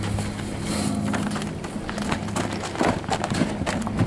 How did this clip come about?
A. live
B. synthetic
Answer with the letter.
A